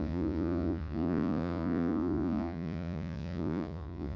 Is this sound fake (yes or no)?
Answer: yes